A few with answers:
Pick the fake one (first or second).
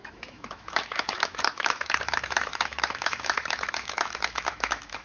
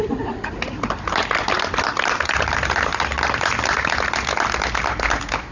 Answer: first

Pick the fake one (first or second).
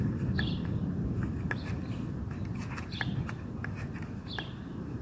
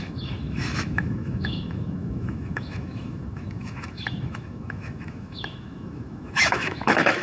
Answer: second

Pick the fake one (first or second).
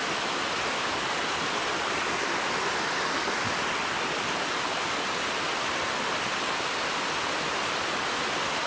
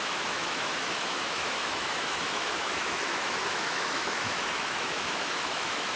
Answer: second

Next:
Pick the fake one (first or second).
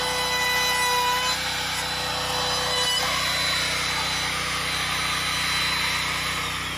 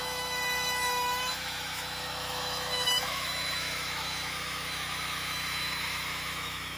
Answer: second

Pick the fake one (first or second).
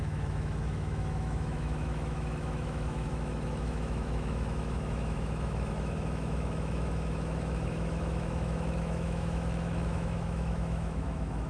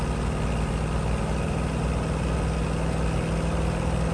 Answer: first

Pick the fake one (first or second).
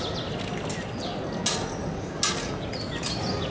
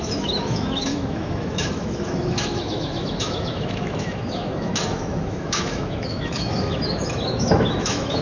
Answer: second